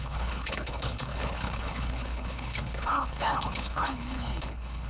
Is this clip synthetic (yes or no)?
yes